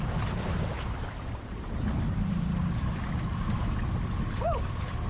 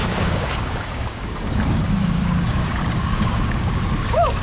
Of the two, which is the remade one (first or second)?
second